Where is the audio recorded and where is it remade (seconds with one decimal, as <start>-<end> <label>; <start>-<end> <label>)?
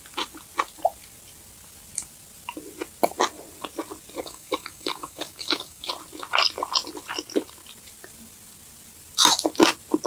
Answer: 0.0-4.2 recorded; 4.2-5.9 remade; 5.9-10.1 recorded